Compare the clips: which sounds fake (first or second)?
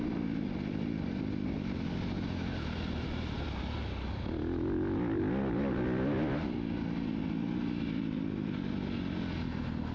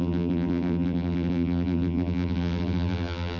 second